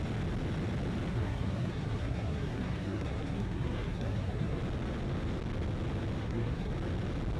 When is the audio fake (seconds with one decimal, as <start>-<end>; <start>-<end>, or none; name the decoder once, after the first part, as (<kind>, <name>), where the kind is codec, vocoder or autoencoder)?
1.1-4.6 (codec, SNAC); 6.2-6.7